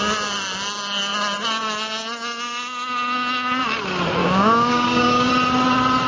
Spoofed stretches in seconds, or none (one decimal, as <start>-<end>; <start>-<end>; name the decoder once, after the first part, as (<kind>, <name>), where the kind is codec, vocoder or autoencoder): 4.2-5.3 (codec, DAC)